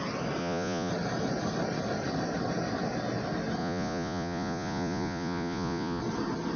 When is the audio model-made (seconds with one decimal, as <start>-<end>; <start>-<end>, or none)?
0.4-0.9; 3.6-6.0